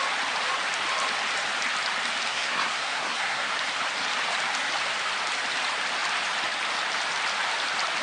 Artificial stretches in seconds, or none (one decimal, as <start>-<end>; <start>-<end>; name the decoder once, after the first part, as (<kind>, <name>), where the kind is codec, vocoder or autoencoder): 2.3-3.5 (codec, SNAC)